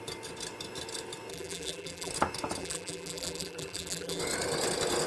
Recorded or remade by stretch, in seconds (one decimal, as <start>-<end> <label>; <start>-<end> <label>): 0.0-1.3 recorded; 1.3-2.1 remade; 2.1-2.6 recorded; 2.6-4.2 remade; 4.2-5.1 recorded